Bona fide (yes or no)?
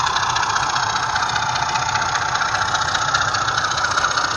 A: yes